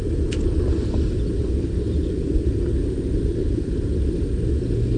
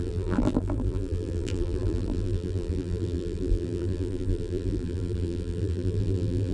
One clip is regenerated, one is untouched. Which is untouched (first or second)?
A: first